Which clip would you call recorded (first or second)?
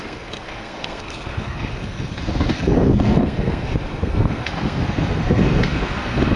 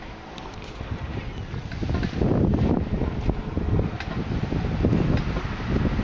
second